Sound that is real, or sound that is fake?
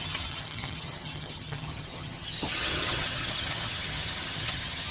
fake